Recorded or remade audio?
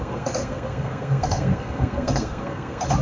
remade